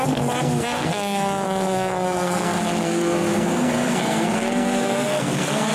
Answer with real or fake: fake